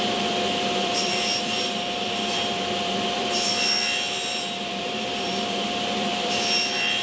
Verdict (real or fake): fake